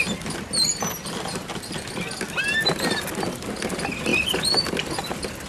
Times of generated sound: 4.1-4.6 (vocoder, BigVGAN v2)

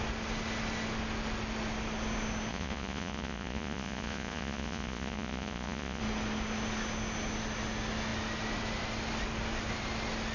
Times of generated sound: 2.5-6.0 (vocoder, Vocos)

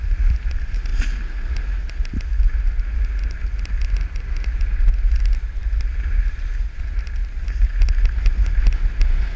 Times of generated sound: none

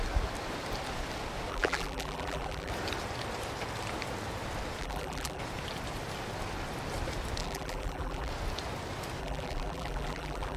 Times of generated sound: 1.5-2.7 (vocoder, BigVGAN v2); 4.8-5.4; 7.4-8.3; 9.2-10.6

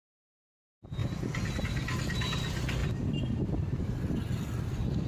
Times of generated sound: none

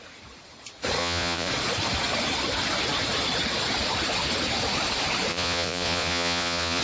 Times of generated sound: 1.0-1.5 (vocoder, Vocos); 5.3-6.8

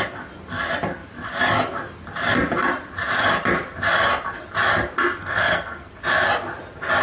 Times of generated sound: 5.2-5.9 (codec, SNAC)